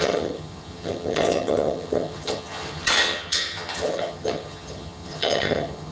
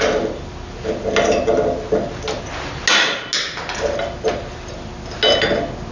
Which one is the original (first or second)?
second